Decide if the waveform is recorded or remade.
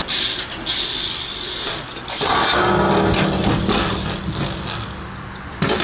recorded